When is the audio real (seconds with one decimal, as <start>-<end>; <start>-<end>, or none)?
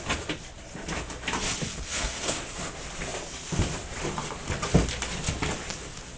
0.0-1.7; 2.4-6.2